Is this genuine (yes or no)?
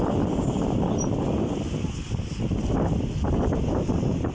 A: yes